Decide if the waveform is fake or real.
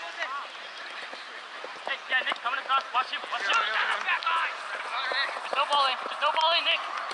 real